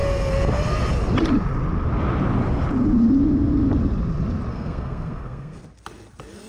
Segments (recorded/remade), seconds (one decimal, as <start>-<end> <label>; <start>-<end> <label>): 0.0-4.5 recorded; 4.5-5.6 remade; 5.6-6.5 recorded